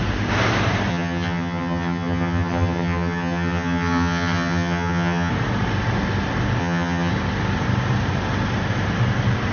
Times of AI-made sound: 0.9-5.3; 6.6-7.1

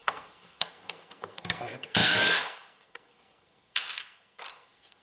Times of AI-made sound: 0.0-5.0

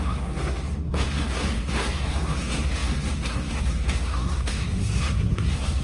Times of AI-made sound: 0.0-5.8